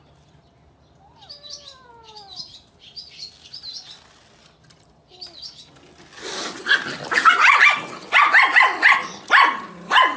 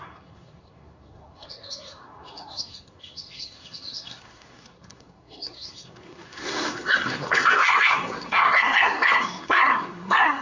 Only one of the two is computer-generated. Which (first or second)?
second